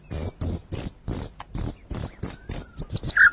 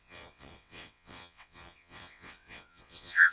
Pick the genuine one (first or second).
first